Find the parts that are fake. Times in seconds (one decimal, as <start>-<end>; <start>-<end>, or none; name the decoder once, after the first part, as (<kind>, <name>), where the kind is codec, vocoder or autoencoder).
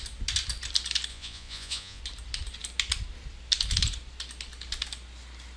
1.1-2.0 (vocoder, Vocos)